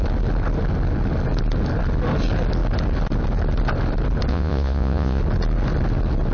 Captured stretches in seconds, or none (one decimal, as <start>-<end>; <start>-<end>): 0.0-4.3; 5.2-6.3